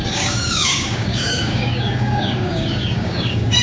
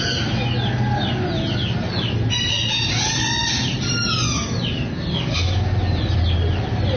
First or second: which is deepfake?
first